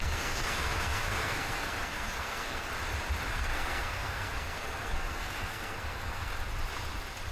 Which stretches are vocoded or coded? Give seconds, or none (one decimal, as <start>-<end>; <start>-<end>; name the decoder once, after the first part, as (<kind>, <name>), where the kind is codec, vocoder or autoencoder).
0.0-2.7 (codec, SNAC); 3.3-6.3

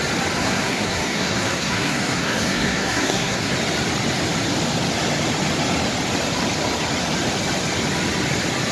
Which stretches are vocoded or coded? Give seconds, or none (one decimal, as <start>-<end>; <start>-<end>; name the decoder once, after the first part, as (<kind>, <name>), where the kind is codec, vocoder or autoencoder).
0.4-3.5 (codec, SNAC)

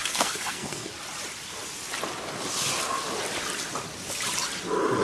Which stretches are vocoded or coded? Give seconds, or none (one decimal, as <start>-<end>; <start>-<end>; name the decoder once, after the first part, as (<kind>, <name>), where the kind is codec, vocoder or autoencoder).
0.0-0.9 (codec, SNAC)

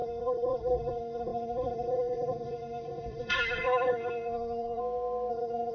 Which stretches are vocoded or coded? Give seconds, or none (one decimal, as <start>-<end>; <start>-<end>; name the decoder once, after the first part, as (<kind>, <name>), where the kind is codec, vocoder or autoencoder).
0.0-4.8 (codec, SNAC); 5.3-5.7